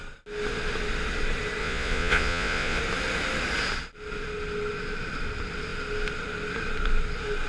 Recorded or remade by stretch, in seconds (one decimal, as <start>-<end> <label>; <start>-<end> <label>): 0.0-1.6 recorded; 1.6-2.8 remade; 2.8-7.5 recorded